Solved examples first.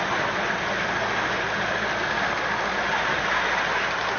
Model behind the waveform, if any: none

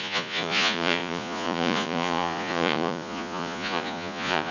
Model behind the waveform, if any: vocoder, Vocos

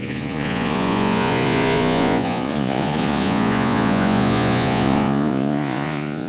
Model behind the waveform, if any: vocoder, Vocos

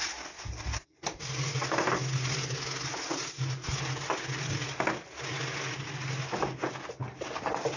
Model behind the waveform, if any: none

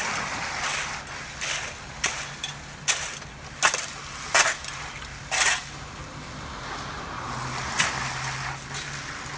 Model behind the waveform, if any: none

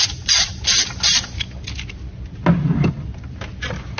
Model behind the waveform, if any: none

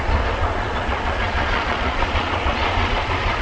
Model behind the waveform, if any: vocoder, Vocos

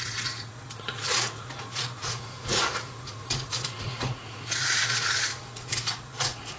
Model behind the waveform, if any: vocoder, Vocos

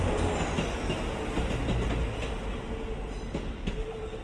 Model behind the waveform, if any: none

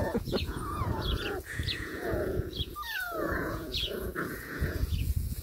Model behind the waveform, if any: vocoder, Vocos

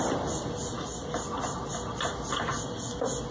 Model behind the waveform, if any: none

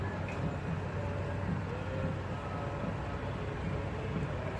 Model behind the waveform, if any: none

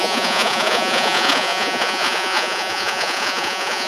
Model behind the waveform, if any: vocoder, Vocos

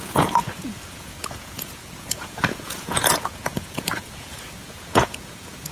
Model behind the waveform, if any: vocoder, Vocos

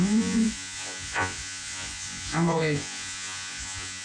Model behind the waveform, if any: vocoder, Vocos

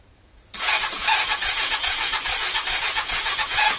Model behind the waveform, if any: vocoder, Vocos